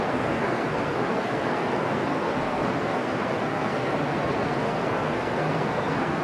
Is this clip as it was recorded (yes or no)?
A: no